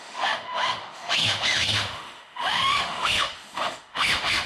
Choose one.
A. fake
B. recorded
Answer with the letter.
A